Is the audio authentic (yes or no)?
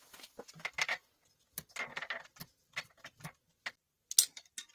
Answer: yes